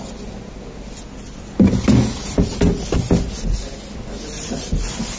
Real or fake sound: real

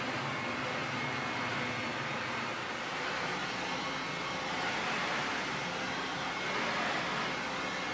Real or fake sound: real